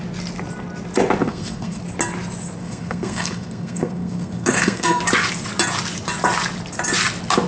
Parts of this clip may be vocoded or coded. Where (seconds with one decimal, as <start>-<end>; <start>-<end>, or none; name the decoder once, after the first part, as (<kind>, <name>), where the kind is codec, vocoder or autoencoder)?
1.2-1.8 (codec, SNAC); 2.6-5.0